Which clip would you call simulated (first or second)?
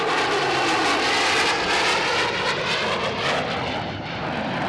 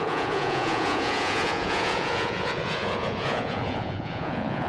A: second